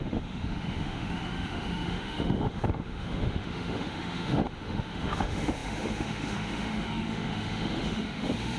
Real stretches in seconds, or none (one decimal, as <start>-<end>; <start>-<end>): none